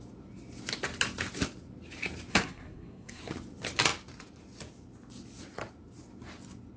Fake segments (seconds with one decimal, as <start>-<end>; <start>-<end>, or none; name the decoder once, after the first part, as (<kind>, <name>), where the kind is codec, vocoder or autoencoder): 2.3-3.2 (codec, SNAC)